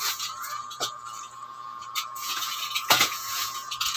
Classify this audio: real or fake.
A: fake